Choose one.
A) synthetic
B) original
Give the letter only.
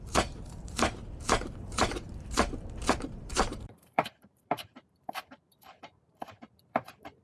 A